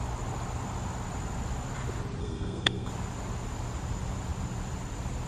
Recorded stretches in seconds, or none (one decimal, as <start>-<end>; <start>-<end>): 0.0-2.2; 2.9-5.3